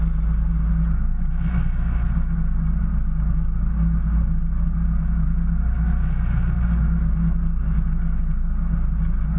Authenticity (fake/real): real